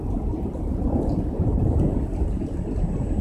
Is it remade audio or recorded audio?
recorded